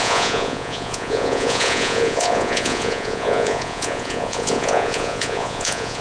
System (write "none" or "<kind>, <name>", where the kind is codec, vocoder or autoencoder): vocoder, Vocos